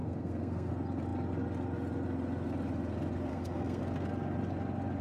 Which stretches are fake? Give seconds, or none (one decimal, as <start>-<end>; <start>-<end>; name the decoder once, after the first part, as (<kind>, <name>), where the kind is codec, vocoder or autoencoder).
0.0-0.7 (codec, SNAC); 3.3-3.8